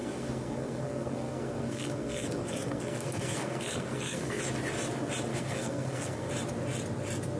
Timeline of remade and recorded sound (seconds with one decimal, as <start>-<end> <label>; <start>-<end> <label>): 0.0-4.4 remade; 4.4-5.3 recorded; 5.3-6.3 remade; 6.3-7.4 recorded